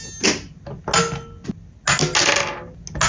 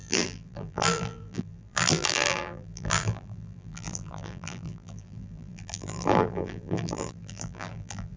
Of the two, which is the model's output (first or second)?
second